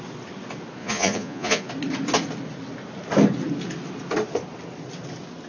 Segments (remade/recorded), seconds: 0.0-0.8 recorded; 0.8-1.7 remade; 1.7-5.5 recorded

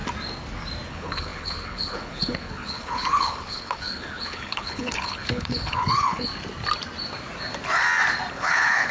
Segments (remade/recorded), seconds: 0.0-0.9 recorded; 0.9-6.3 remade; 6.3-8.3 recorded; 8.3-8.9 remade

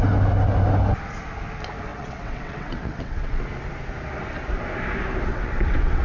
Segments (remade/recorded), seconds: 0.0-1.9 recorded; 1.9-3.4 remade; 3.4-5.3 recorded; 5.3-6.0 remade

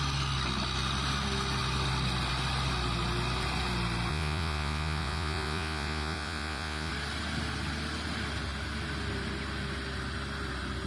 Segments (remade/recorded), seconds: 0.0-4.1 recorded; 4.1-6.9 remade; 6.9-10.9 recorded

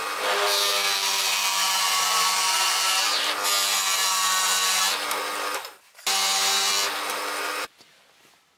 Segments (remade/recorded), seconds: 0.0-0.7 recorded; 0.7-3.3 remade; 3.3-7.5 recorded; 7.5-8.0 remade; 8.0-8.6 recorded

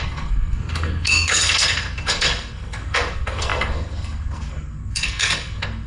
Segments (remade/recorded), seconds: 0.0-5.9 remade

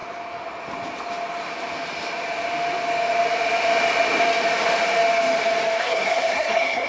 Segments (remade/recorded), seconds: 0.0-5.8 recorded; 5.8-6.9 remade